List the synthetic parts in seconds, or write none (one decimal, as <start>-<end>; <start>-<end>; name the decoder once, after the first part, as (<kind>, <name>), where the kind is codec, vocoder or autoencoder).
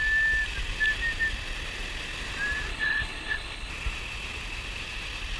2.7-3.7 (codec, HILCodec)